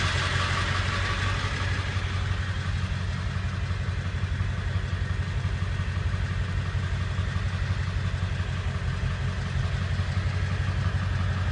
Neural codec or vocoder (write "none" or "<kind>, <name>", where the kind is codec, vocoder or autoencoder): none